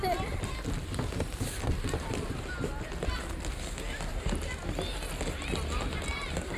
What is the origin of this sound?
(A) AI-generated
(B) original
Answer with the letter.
B